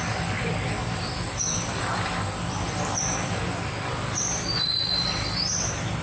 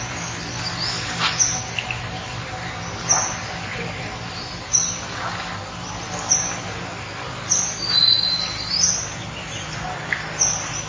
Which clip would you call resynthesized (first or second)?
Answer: first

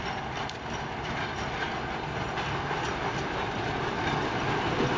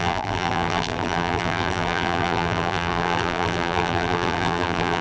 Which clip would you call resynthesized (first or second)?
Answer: second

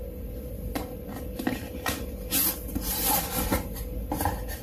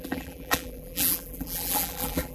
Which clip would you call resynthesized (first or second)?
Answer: second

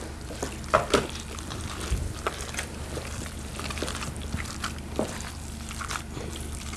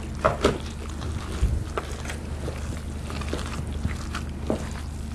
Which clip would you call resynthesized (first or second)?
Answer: first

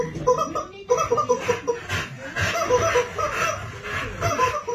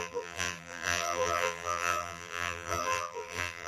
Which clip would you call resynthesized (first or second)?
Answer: second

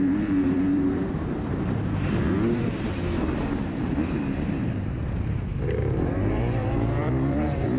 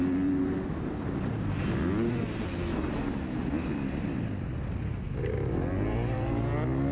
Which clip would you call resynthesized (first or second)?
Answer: first